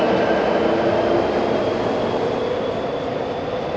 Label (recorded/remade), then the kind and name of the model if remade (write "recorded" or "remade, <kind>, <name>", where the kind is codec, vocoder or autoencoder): recorded